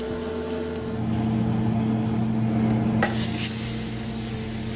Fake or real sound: real